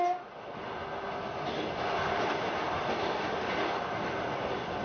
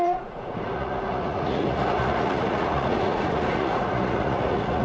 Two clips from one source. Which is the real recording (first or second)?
first